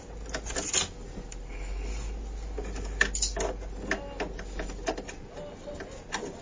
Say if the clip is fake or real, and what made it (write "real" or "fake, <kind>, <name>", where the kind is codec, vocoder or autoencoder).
real